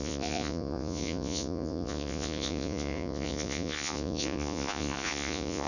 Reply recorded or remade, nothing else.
remade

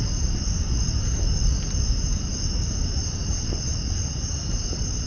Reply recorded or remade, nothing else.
recorded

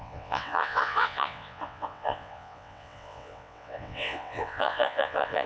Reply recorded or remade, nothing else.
remade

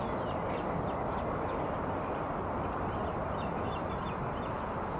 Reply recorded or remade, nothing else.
recorded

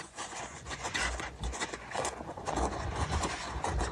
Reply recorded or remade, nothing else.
remade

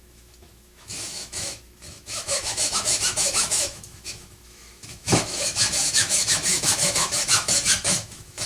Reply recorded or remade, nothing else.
remade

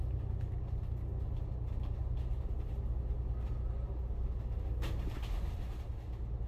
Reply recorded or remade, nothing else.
recorded